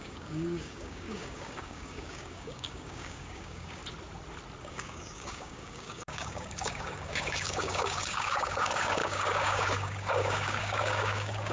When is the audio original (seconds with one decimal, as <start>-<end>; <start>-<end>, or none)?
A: 3.8-4.6